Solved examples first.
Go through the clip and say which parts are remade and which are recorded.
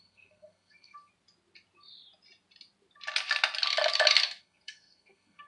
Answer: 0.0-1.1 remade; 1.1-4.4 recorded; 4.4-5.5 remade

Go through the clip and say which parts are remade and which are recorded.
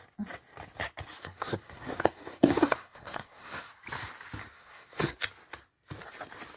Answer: 0.0-1.2 recorded; 1.2-3.7 remade; 3.7-4.4 recorded; 4.4-5.2 remade; 5.2-6.6 recorded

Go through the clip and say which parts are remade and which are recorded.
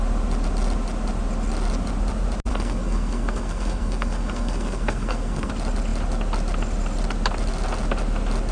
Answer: 0.0-2.5 recorded; 2.5-5.5 remade; 5.5-8.5 recorded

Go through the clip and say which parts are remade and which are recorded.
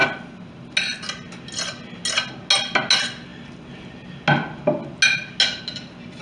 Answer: 0.0-6.2 recorded